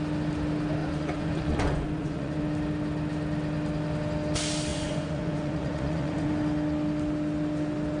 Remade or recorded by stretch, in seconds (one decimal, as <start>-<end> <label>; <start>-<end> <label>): 0.0-0.8 recorded; 0.8-2.4 remade; 2.4-4.7 recorded; 4.7-6.3 remade; 6.3-8.0 recorded